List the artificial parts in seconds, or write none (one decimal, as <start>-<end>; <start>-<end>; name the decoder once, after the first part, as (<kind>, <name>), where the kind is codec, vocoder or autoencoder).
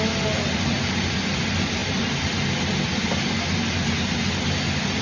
none